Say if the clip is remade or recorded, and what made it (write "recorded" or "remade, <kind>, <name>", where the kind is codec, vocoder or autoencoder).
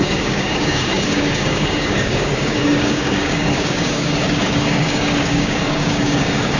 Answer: remade, codec, DAC